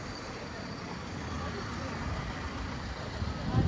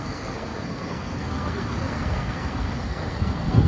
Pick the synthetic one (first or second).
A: second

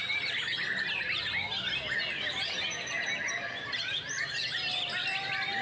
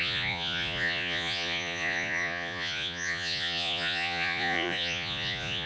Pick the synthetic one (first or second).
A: second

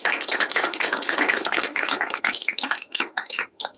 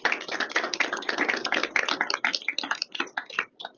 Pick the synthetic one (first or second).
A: first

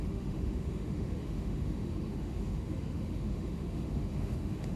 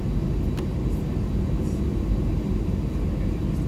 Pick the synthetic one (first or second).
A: first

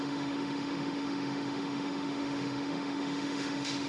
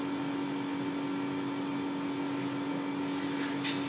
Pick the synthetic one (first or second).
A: first